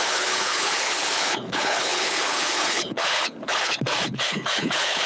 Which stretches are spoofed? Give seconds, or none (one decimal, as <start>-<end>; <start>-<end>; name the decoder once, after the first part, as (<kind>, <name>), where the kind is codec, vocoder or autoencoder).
0.0-5.1 (codec, HILCodec)